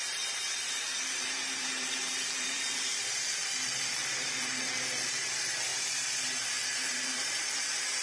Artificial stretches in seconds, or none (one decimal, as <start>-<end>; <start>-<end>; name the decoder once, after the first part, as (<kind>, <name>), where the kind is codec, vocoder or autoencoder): 0.0-8.0 (vocoder, BigVGAN v2)